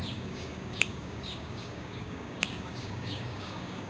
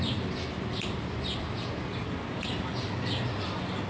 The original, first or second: second